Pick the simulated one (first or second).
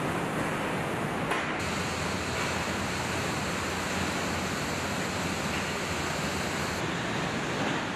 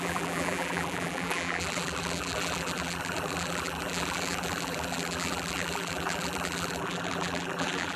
second